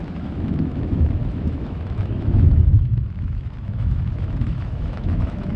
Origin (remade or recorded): remade